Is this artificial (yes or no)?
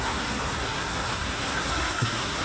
yes